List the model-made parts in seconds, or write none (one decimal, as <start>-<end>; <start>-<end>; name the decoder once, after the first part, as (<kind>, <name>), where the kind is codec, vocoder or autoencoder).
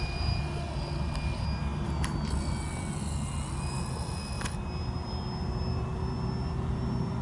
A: none